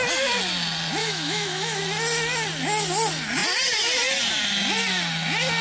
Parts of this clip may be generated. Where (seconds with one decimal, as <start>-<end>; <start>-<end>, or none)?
1.0-1.8